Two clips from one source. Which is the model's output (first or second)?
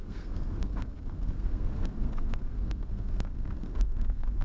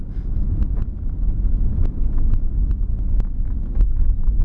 first